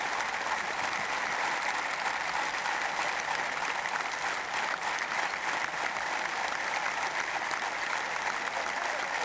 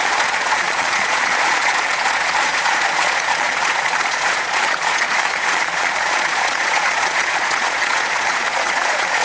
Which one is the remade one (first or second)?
second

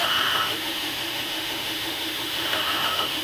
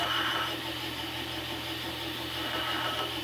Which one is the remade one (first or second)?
first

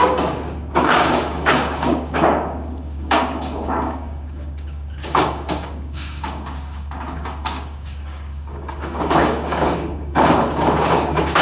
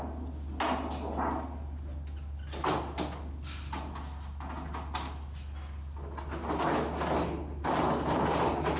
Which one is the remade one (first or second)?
first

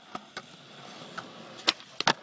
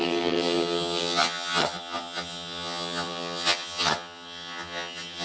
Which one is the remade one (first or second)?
second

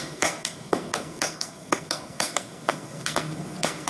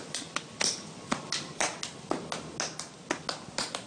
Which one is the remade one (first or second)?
first